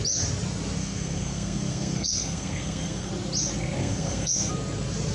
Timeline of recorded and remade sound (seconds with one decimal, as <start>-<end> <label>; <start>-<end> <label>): 0.0-0.8 recorded; 0.8-3.1 remade; 3.1-3.8 recorded; 3.8-4.5 remade; 4.5-5.1 recorded